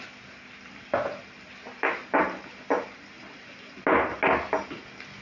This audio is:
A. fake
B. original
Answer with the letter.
B